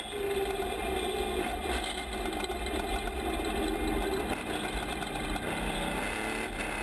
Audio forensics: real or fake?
real